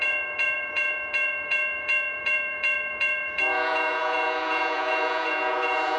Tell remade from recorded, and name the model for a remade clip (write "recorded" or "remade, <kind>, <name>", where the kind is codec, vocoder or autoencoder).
remade, vocoder, Vocos